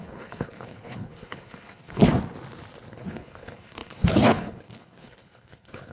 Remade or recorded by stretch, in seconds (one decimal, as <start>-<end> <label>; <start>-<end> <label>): 0.0-2.0 remade; 2.0-3.0 recorded; 3.0-5.9 remade

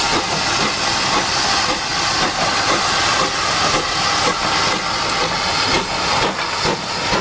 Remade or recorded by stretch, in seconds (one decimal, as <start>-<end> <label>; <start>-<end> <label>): 0.0-7.2 recorded

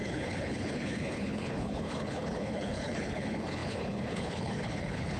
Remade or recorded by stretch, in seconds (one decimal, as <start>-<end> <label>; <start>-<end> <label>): 0.0-5.2 remade

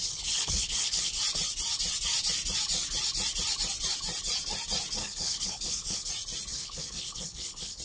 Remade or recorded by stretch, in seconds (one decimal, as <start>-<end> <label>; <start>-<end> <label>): 0.0-1.2 remade; 1.2-5.0 recorded; 5.0-6.1 remade; 6.1-6.5 recorded; 6.5-7.8 remade